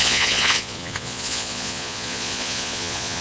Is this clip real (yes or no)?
no